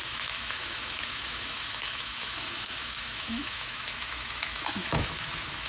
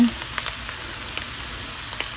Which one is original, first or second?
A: second